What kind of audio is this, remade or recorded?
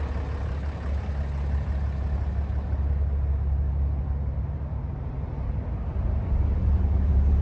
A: recorded